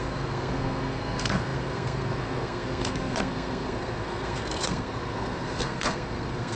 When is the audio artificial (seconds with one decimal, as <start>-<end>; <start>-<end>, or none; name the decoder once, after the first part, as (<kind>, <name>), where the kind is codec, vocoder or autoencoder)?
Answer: 0.0-6.6 (codec, SNAC)